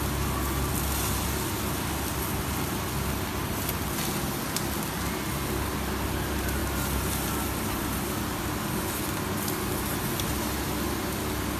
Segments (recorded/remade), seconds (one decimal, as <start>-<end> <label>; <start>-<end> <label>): 0.0-11.6 recorded